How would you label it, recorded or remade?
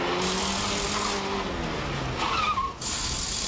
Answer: recorded